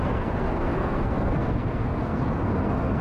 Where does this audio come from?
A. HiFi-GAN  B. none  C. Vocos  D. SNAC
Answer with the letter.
D